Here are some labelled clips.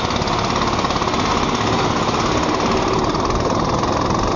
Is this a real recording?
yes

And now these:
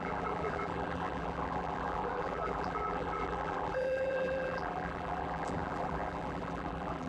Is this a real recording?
no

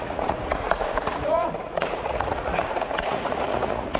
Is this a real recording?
no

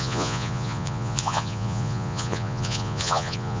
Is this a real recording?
no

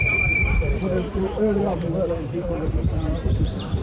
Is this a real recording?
no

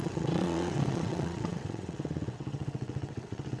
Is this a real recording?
no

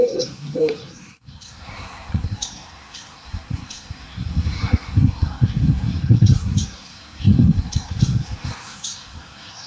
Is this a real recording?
no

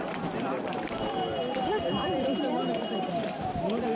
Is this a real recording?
yes